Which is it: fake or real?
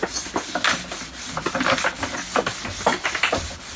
real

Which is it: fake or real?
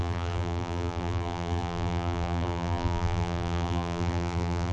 fake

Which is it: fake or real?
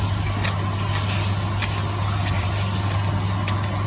real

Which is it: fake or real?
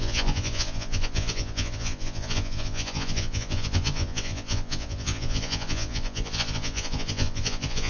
fake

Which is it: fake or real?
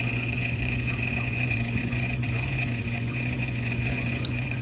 fake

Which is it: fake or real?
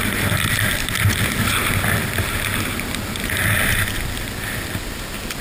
real